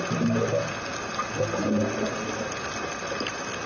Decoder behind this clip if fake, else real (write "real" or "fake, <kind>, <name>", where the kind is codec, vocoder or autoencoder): real